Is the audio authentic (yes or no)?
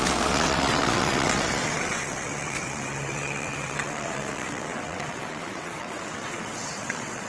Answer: no